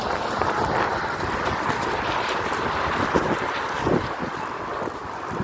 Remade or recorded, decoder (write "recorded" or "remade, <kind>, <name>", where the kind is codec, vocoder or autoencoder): recorded